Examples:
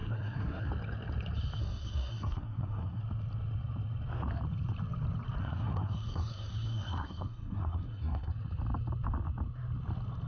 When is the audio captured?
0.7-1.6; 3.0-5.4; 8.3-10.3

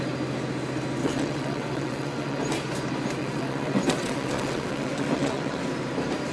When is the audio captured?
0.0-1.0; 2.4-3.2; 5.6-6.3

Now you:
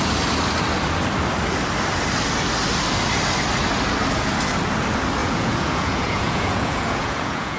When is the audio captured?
0.0-5.2

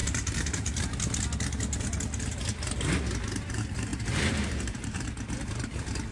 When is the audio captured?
0.8-3.9; 5.0-6.1

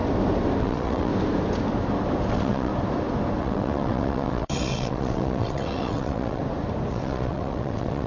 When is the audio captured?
0.0-0.6; 1.1-2.3; 2.7-3.4; 6.4-6.9

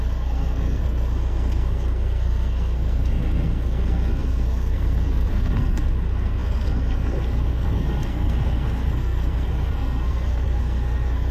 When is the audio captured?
none